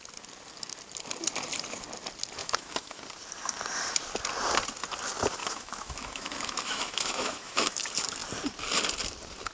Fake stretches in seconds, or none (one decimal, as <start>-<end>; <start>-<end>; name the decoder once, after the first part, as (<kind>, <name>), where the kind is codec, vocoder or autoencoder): 2.4-3.0 (autoencoder, DAC-VAE); 5.4-7.8